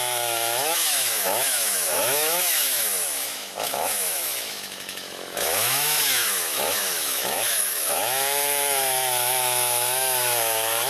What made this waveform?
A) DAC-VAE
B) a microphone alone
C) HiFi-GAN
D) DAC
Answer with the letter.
A